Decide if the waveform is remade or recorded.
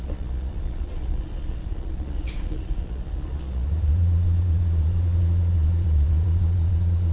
remade